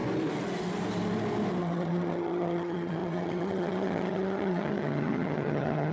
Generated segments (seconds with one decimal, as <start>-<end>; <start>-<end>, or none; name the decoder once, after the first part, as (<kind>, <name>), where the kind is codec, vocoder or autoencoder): 1.6-5.9 (vocoder, HiFi-GAN)